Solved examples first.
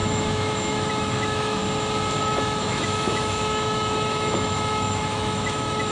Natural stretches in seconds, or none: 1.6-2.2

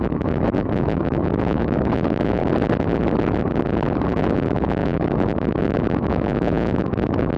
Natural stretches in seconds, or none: 2.4-4.1